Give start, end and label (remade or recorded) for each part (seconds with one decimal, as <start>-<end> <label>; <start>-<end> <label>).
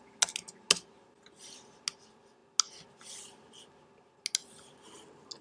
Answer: 0.0-5.4 recorded